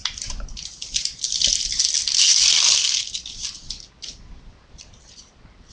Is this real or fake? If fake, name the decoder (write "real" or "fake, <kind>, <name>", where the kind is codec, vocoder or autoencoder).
real